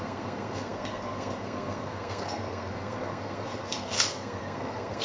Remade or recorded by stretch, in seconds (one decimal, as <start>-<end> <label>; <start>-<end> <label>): 0.0-5.0 remade